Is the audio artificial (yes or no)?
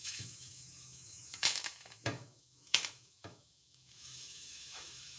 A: yes